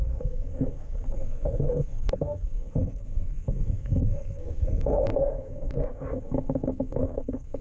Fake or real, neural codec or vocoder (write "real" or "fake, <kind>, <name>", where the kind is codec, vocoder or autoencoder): fake, codec, SNAC